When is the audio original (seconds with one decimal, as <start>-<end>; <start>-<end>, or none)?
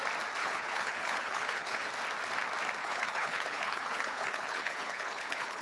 0.0-0.4; 1.9-2.8